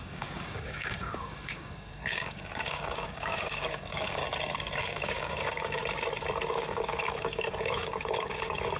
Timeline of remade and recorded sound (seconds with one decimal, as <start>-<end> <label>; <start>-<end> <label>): 0.0-4.2 remade; 4.2-4.8 recorded; 4.8-5.8 remade; 5.8-6.5 recorded; 6.5-8.8 remade